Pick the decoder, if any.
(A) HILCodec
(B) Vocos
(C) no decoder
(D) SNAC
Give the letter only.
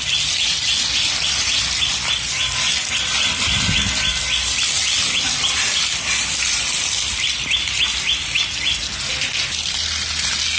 C